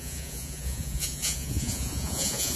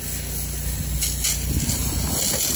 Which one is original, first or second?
second